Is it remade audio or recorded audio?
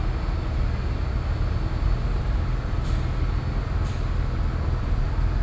recorded